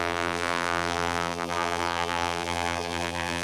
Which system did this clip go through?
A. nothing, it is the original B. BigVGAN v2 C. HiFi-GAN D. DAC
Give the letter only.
B